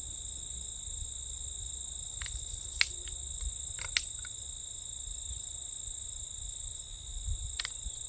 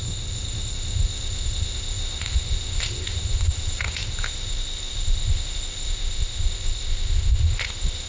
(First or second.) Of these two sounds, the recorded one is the first